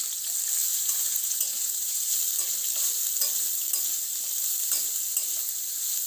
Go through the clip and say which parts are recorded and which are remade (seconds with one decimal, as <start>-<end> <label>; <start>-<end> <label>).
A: 0.0-0.7 recorded; 0.7-2.1 remade; 2.1-6.1 recorded